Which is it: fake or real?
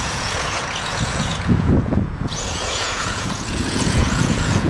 fake